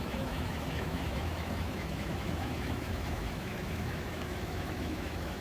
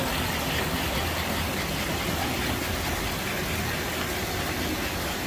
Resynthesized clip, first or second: first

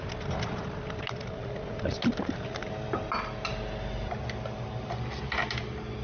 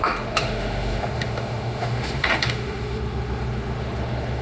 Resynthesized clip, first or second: second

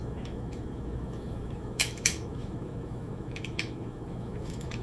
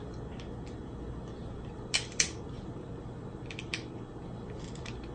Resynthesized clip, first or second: first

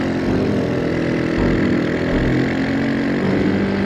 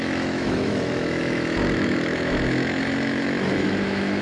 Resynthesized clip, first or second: second